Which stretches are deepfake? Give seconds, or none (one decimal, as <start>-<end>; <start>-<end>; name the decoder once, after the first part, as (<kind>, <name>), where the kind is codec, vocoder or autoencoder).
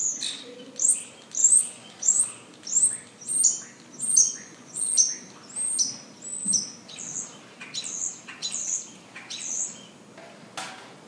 1.4-2.2 (vocoder, Vocos); 4.2-5.0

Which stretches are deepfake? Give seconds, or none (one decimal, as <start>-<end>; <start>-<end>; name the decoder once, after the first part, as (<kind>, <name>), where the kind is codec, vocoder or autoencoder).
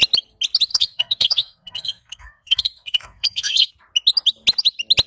0.7-3.7 (codec, SNAC)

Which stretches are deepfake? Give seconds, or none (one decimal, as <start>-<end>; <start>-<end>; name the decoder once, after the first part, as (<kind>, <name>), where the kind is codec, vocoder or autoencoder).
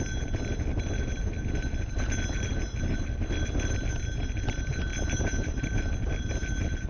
none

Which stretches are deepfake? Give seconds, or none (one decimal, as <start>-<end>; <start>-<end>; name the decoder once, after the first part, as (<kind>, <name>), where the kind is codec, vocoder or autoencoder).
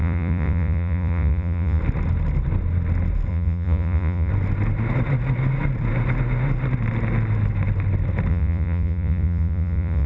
0.0-1.8 (vocoder, Vocos); 3.3-4.3; 8.3-10.1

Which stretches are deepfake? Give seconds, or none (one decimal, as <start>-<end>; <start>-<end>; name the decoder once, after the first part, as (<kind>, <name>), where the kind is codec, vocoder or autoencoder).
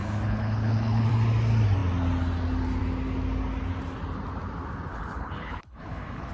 0.0-1.1 (codec, HILCodec); 4.9-6.3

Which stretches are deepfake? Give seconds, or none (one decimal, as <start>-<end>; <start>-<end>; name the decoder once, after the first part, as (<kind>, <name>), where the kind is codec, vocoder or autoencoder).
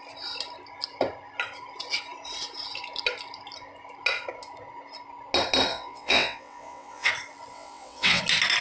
5.7-7.1 (vocoder, WaveNeXt); 7.5-8.2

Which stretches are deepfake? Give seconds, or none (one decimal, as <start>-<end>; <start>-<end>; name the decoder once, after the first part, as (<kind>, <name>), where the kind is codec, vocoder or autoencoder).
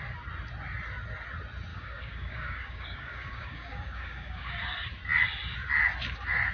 1.7-4.5 (codec, DAC)